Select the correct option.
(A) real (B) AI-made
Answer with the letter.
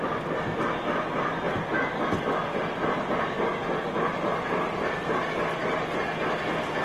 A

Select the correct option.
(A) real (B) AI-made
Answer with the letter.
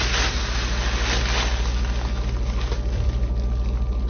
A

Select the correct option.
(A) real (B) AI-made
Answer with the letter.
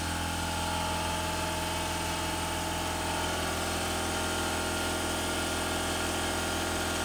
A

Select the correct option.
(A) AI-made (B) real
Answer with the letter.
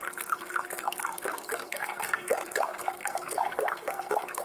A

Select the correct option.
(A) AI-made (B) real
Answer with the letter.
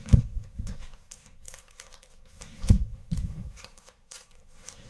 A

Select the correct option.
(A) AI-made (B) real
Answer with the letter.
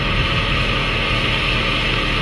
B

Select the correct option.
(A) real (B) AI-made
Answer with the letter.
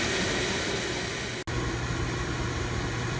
A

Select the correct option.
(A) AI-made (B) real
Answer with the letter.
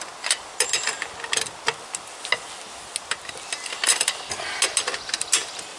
B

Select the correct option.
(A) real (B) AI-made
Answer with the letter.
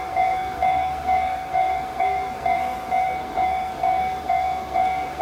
B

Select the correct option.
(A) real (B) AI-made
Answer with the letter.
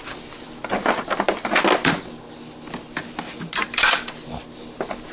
A